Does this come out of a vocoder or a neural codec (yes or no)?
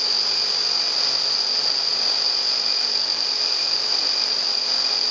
no